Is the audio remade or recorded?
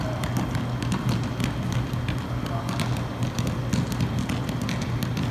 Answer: recorded